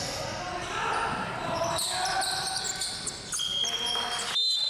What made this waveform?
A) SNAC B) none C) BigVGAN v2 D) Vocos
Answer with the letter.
B